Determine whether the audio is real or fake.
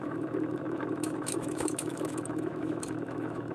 fake